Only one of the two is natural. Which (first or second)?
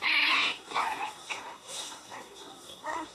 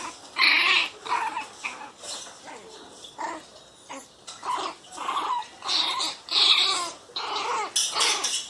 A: second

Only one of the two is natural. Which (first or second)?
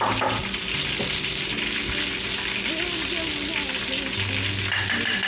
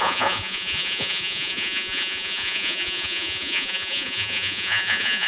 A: first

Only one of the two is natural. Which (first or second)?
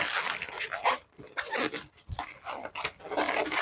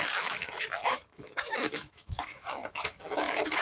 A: first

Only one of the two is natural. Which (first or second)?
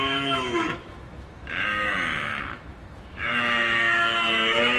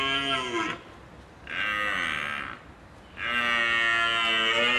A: second